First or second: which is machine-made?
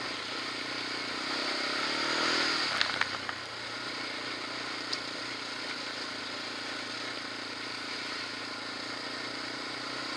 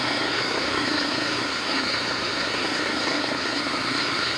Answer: second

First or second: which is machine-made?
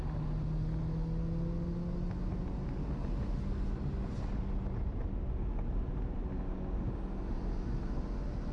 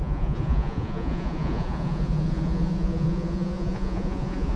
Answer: second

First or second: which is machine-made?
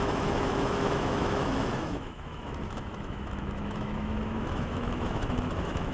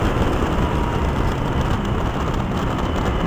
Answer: first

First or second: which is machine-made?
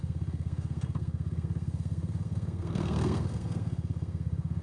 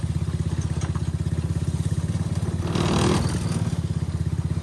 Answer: first